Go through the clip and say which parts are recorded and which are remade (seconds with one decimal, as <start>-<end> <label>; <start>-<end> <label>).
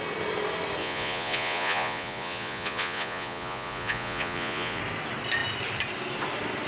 0.0-0.8 recorded; 0.8-4.8 remade; 4.8-6.7 recorded